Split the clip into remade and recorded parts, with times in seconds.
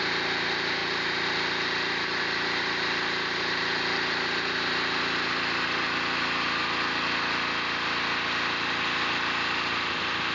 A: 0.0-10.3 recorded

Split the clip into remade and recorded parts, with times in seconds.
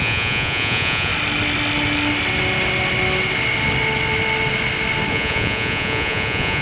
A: 0.0-1.1 remade; 1.1-5.1 recorded; 5.1-6.6 remade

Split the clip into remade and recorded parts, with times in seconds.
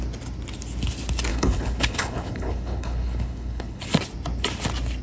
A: 0.0-1.3 recorded; 1.3-3.8 remade; 3.8-5.0 recorded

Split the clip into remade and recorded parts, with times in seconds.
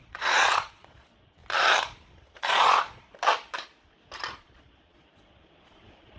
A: 0.0-1.4 remade; 1.4-2.1 recorded; 2.1-3.1 remade; 3.1-4.4 recorded; 4.4-6.2 remade